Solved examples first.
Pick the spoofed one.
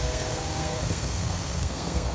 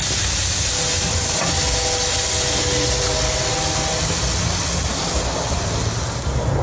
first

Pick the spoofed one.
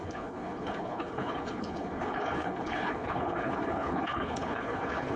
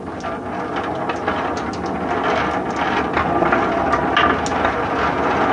first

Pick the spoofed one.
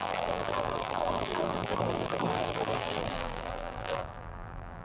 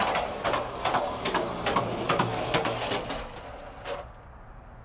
first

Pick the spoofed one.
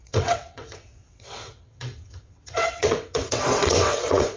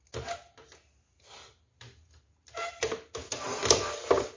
first